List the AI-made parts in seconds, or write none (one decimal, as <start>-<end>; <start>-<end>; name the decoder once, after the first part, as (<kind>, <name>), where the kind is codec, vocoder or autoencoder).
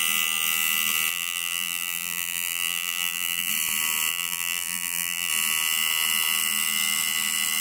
1.1-3.5 (vocoder, BigVGAN v2); 4.1-5.3